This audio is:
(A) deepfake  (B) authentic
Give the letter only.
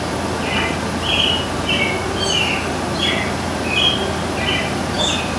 B